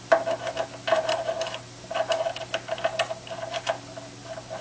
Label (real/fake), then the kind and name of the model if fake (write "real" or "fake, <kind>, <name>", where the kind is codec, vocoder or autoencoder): real